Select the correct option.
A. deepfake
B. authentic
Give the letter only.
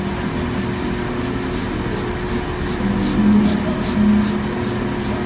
B